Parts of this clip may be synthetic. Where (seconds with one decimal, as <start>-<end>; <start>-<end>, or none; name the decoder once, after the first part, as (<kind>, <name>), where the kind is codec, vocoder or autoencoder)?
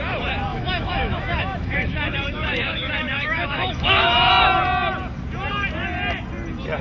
0.5-4.3 (autoencoder, DAC-VAE)